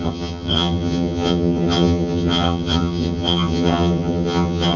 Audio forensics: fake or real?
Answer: fake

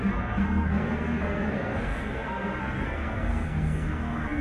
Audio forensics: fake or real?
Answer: fake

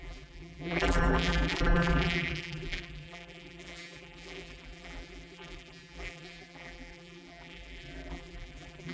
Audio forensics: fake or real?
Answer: fake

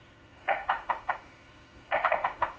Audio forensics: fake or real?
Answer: fake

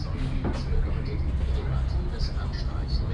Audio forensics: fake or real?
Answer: real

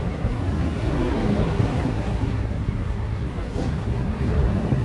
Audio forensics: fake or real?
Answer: fake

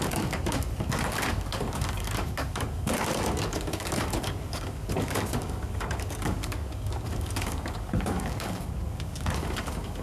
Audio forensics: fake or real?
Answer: fake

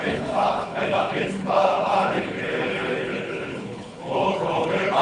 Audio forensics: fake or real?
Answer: fake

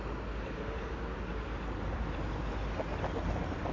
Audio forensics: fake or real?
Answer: real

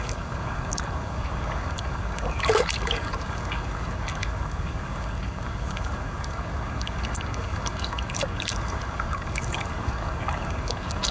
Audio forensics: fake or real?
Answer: fake